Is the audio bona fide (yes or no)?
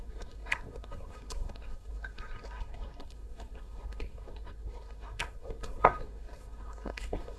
no